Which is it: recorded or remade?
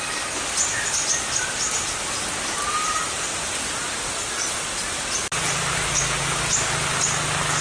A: recorded